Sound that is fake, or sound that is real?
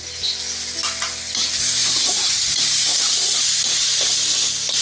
real